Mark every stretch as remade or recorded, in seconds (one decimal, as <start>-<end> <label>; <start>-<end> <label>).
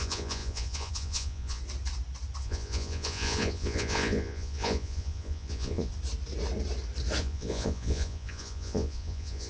0.0-1.6 remade; 1.6-2.4 recorded; 2.4-5.9 remade; 5.9-7.2 recorded; 7.2-9.5 remade